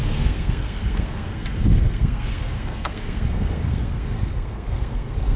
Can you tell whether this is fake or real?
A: fake